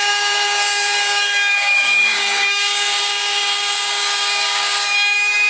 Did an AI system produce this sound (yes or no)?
yes